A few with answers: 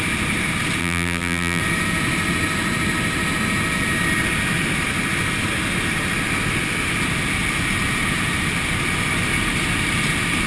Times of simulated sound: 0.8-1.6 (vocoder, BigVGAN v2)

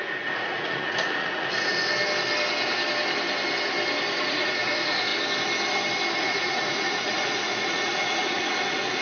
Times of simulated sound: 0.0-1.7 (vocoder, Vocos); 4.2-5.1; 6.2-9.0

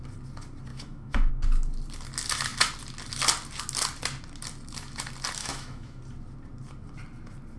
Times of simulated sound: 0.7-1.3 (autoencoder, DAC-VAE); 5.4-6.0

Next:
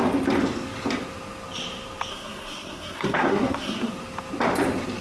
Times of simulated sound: 2.1-3.9 (codec, SNAC)

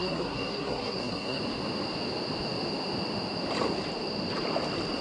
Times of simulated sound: 0.0-1.4 (codec, SNAC)